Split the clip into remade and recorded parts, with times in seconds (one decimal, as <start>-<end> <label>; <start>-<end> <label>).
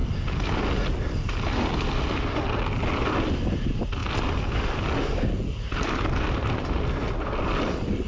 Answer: 0.0-8.1 recorded